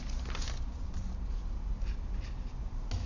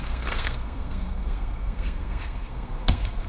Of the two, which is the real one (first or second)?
first